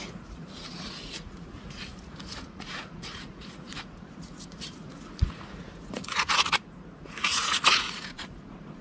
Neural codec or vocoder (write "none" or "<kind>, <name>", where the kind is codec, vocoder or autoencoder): vocoder, Vocos